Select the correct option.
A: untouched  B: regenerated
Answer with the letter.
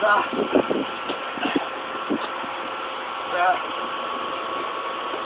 A